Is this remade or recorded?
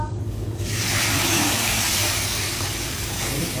remade